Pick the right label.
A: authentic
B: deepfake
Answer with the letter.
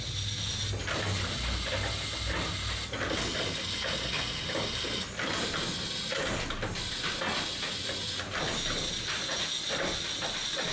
A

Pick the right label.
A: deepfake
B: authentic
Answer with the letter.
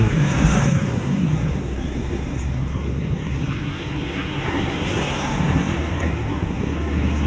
A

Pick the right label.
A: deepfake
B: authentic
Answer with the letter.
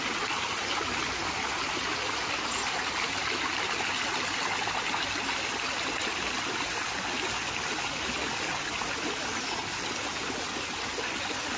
B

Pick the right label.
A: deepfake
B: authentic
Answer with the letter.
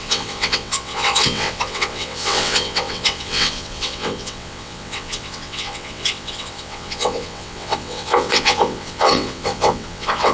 A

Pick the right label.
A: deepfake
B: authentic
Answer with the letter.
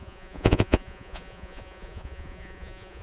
A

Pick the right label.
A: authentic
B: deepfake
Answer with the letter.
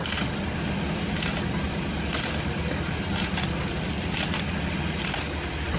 A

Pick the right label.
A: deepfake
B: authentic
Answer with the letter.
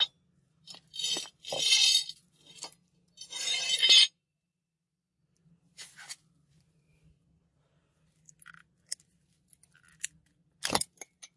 B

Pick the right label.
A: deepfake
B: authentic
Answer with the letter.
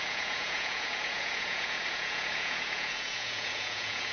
A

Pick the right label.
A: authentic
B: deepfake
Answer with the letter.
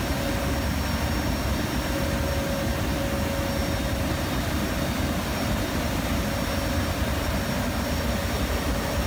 A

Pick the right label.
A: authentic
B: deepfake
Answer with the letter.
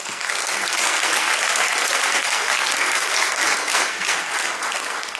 B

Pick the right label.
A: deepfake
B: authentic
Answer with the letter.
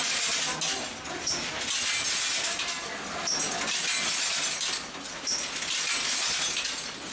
B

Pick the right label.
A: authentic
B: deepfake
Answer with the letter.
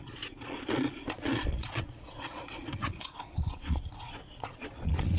B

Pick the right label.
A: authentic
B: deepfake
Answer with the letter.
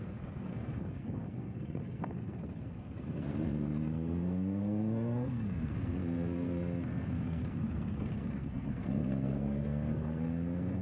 B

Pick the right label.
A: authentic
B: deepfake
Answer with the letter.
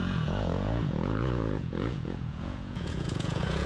B